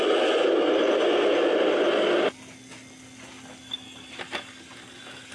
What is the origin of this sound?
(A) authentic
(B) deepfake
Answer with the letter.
A